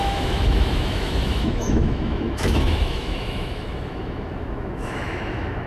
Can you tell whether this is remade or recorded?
remade